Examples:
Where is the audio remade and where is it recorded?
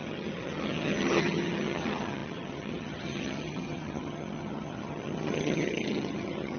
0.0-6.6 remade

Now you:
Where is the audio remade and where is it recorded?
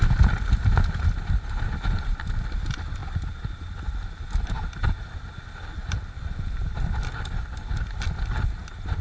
0.0-9.0 recorded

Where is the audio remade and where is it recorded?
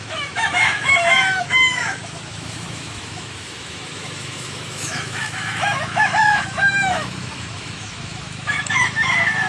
0.0-9.5 remade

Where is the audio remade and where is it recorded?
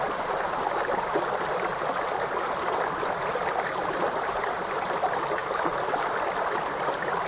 0.0-7.3 recorded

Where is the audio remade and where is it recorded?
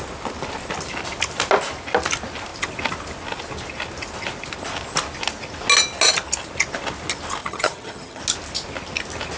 0.0-7.4 recorded; 7.4-8.2 remade; 8.2-9.4 recorded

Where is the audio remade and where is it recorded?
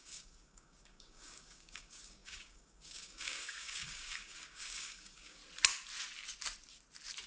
0.0-5.4 remade; 5.4-7.3 recorded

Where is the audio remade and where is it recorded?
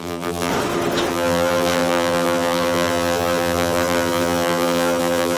0.0-0.5 remade; 0.5-1.1 recorded; 1.1-5.4 remade